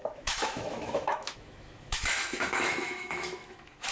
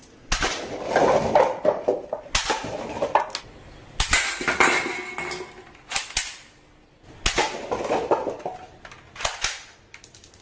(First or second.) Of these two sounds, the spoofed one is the first